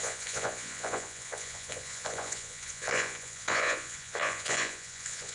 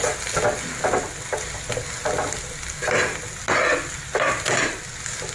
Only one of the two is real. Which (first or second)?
second